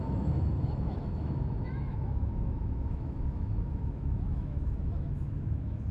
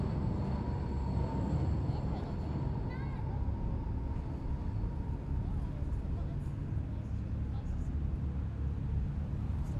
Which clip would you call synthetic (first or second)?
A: first